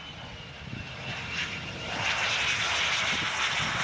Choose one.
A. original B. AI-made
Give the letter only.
A